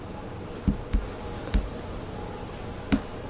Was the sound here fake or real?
real